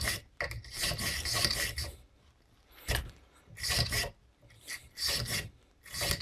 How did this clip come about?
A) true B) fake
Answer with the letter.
A